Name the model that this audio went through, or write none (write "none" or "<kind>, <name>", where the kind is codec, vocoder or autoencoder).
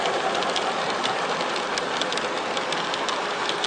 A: none